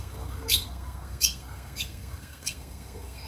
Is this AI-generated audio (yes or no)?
yes